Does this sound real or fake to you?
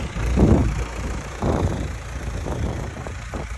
fake